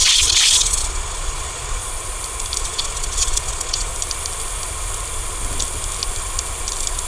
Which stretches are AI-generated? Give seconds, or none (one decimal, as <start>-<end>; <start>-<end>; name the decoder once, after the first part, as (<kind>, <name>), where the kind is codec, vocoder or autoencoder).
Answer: 0.0-1.8 (vocoder, Vocos); 2.6-3.9